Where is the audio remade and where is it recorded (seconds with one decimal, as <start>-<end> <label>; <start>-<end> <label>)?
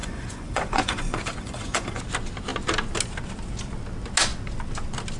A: 0.0-2.0 remade; 2.0-5.2 recorded